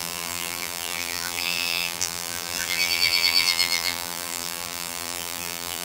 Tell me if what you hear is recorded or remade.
remade